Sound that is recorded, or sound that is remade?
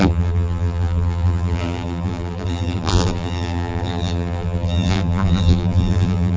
remade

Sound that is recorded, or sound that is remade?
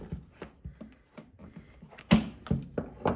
recorded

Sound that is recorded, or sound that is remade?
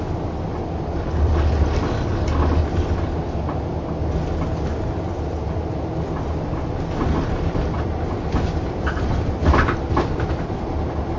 recorded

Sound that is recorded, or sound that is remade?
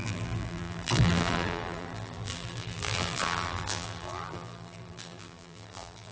remade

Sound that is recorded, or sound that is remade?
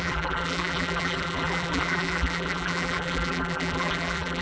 remade